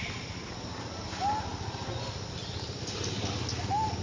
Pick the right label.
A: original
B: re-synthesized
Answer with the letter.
A